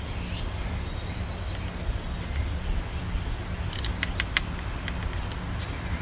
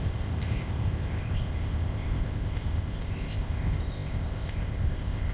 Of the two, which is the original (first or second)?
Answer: first